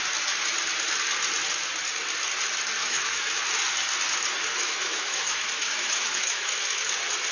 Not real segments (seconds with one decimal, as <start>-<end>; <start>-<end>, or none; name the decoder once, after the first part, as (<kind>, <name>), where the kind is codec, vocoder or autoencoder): 2.8-3.4 (autoencoder, DAC-VAE); 4.5-6.8